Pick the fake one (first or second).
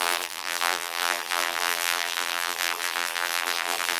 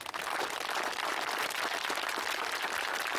first